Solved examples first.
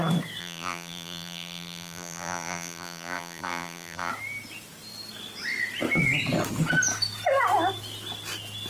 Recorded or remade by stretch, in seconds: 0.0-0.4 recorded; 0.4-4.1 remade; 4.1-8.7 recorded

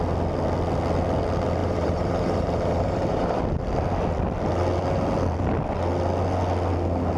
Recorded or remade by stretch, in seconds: 0.0-1.6 recorded; 1.6-3.4 remade; 3.4-7.2 recorded

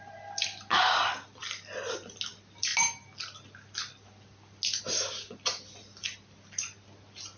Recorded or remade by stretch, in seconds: 0.0-7.4 recorded

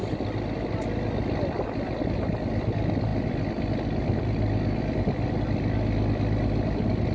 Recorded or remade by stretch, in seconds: 0.0-3.1 recorded; 3.1-5.3 remade; 5.3-7.1 recorded

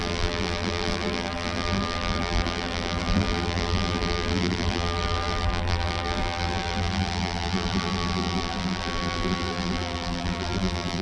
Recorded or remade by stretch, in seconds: 0.0-11.0 remade

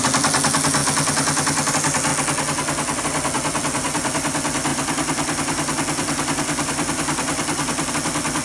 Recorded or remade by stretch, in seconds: 0.0-2.1 remade; 2.1-3.0 recorded; 3.0-8.4 remade